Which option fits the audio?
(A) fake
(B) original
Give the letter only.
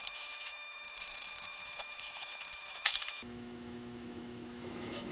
A